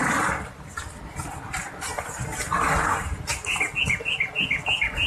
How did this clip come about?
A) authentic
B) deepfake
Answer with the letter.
A